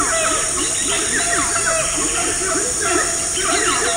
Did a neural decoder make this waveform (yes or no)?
no